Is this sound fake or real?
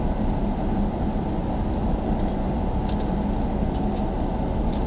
real